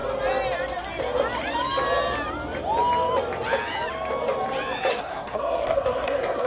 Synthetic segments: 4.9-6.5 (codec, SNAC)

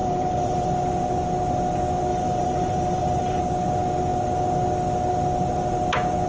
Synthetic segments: 0.0-0.7 (vocoder, BigVGAN v2); 2.1-3.4

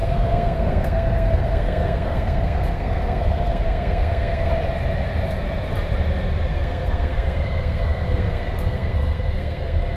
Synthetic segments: 0.0-4.5 (codec, SNAC); 6.5-10.0